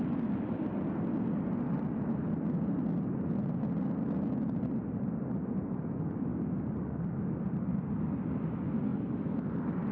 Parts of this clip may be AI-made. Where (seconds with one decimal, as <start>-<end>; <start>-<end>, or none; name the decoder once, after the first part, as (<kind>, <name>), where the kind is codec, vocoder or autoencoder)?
none